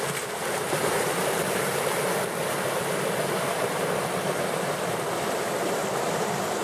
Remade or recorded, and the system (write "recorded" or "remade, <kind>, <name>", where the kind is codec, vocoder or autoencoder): recorded